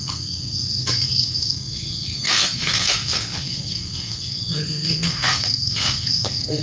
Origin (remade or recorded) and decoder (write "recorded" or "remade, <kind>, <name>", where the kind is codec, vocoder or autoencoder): remade, codec, SNAC